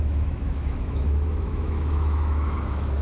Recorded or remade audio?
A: remade